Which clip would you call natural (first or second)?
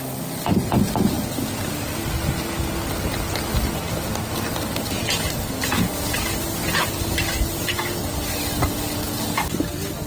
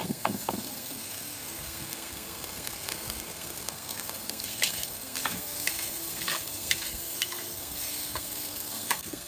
first